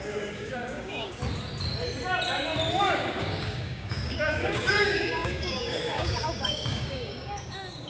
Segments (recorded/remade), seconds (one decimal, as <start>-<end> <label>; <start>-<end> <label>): 0.0-1.2 remade; 1.2-2.8 recorded; 2.8-7.9 remade